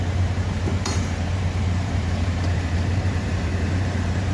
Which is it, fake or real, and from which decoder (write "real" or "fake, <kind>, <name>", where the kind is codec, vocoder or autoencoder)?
fake, vocoder, BigVGAN v2